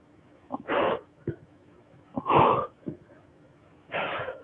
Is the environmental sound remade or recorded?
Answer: remade